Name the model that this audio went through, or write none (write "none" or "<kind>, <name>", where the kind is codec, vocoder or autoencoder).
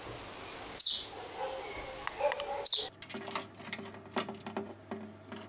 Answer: none